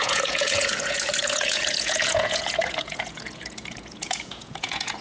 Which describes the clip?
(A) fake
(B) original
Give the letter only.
A